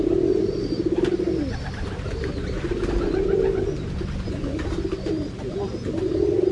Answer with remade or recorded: recorded